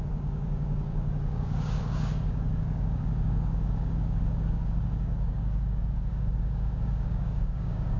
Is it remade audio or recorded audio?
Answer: remade